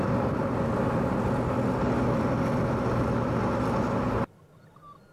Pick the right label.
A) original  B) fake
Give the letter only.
A